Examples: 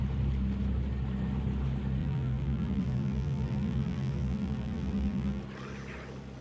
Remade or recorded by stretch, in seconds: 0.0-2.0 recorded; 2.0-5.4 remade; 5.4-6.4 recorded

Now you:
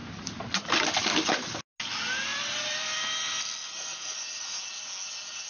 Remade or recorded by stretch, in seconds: 0.0-2.3 recorded; 2.3-4.4 remade; 4.4-5.5 recorded

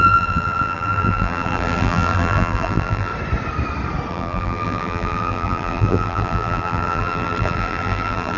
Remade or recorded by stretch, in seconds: 0.0-3.1 remade; 3.1-4.1 recorded; 4.1-8.4 remade

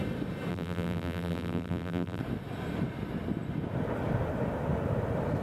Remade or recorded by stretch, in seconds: 0.0-0.5 recorded; 0.5-2.2 remade; 2.2-5.4 recorded

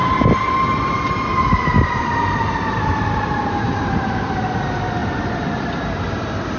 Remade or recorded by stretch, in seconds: 0.0-1.3 recorded; 1.3-4.0 remade; 4.0-5.0 recorded; 5.0-5.8 remade; 5.8-6.6 recorded

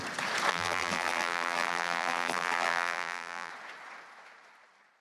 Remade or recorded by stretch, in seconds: 0.0-0.5 recorded; 0.5-3.5 remade; 3.5-5.0 recorded

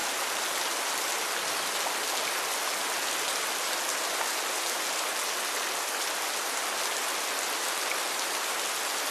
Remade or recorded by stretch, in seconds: 0.0-9.1 recorded